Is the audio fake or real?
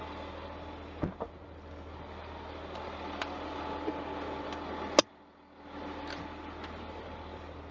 real